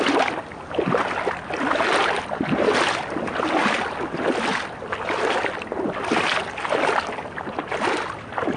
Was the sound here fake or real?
real